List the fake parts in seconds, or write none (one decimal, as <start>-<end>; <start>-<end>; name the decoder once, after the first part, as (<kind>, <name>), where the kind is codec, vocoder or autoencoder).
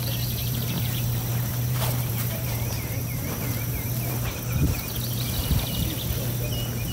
0.4-4.4 (vocoder, BigVGAN v2)